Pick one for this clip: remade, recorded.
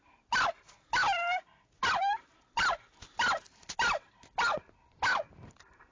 recorded